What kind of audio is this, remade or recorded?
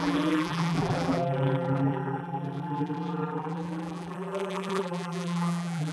remade